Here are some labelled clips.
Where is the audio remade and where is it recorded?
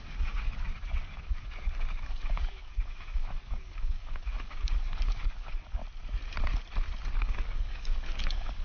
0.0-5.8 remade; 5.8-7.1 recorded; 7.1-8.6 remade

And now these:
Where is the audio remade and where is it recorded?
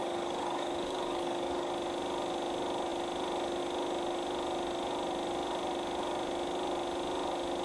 0.0-1.7 remade; 1.7-7.6 recorded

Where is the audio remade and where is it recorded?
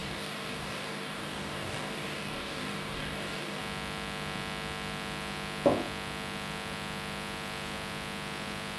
0.0-3.6 remade; 3.6-8.8 recorded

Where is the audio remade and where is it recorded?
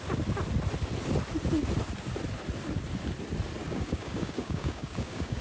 0.0-3.6 recorded; 3.6-5.4 remade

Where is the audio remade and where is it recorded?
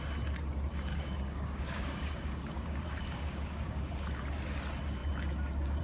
0.0-0.9 recorded; 0.9-4.2 remade; 4.2-5.8 recorded